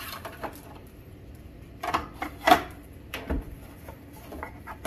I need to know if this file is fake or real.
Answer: fake